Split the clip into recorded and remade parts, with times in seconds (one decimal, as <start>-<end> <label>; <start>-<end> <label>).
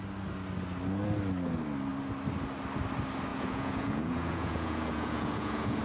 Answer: 0.0-3.3 recorded; 3.3-5.8 remade